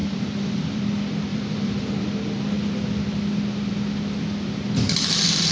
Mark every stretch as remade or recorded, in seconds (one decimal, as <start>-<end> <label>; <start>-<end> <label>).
0.0-0.8 remade; 0.8-1.3 recorded; 1.3-1.9 remade; 1.9-5.5 recorded